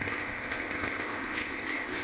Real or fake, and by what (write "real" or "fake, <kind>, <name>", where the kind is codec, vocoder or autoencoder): fake, codec, ZipCodec